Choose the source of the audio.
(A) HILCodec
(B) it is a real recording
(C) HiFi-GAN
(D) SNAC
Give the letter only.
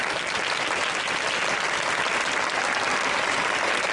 B